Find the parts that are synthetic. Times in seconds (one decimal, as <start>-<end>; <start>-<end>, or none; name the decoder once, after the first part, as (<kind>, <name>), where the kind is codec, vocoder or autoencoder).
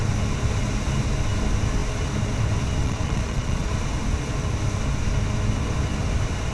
2.8-3.7 (vocoder, Vocos)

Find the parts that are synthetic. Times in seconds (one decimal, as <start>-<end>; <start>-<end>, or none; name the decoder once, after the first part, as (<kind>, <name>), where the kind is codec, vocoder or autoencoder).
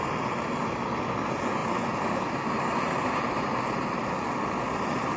none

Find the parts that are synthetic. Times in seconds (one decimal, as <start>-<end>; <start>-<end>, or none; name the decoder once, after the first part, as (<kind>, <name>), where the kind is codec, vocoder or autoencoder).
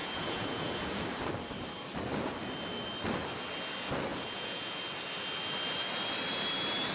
0.0-1.0 (vocoder, Vocos); 4.1-4.8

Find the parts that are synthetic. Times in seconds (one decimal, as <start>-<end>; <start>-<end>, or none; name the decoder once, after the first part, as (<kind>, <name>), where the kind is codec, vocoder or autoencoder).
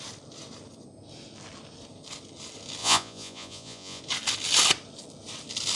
2.8-4.0 (vocoder, Vocos)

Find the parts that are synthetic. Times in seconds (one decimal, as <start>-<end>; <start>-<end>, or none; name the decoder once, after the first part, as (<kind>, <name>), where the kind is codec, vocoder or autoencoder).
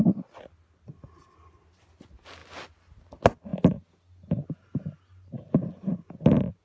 none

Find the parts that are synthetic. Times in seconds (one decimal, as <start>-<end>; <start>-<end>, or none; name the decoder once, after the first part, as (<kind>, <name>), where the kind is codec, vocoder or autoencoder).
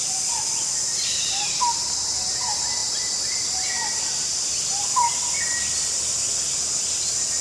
none